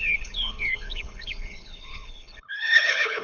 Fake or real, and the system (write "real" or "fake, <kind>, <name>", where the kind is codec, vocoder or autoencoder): fake, codec, HILCodec